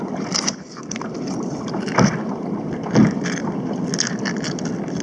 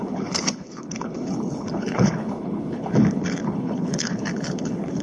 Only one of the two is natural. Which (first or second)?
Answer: first